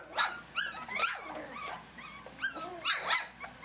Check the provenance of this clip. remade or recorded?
recorded